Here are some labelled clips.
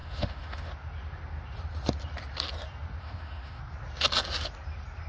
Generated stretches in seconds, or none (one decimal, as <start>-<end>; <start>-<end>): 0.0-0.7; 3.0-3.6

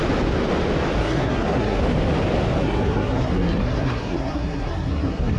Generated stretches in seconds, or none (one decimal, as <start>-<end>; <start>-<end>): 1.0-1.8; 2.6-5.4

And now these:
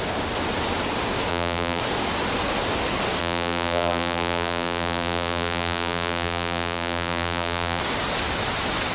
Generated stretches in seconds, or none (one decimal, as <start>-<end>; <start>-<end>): 1.3-1.8; 3.2-7.8

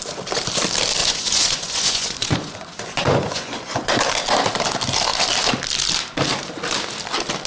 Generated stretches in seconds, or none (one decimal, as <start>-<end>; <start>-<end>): 1.0-4.0

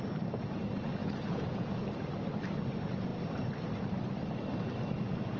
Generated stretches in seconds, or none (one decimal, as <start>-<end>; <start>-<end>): 1.0-1.7

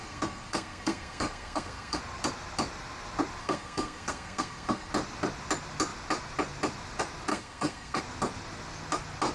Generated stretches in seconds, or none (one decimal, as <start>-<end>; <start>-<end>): 0.0-2.0; 3.4-4.9; 7.3-8.0

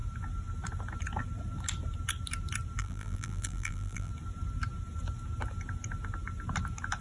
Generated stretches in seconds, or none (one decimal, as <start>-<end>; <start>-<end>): 2.8-4.1

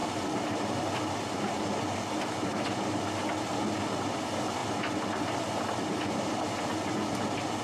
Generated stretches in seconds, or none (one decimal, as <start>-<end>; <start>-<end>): none